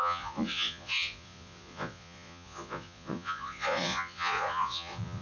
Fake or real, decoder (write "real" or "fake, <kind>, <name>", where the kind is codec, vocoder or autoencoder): fake, vocoder, Vocos